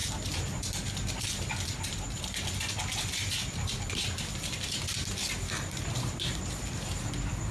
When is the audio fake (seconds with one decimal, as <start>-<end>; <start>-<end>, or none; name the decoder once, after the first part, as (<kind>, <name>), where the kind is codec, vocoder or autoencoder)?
none